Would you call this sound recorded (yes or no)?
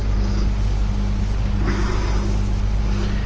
yes